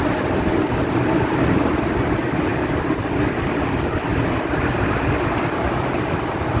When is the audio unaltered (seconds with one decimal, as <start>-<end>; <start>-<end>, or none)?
0.0-6.6